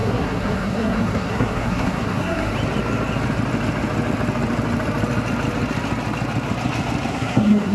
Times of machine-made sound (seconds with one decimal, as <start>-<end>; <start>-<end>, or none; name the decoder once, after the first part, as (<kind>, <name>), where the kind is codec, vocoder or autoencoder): 0.0-2.5 (codec, SNAC); 7.1-7.7